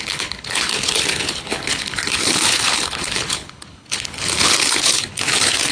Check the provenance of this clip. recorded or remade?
remade